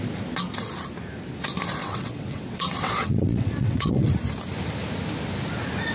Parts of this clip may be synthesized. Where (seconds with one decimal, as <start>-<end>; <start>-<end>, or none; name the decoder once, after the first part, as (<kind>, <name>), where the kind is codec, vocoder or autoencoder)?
1.8-4.1 (vocoder, WaveNeXt)